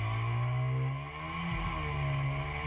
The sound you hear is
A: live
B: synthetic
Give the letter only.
A